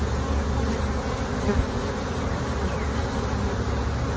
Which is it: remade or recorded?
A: recorded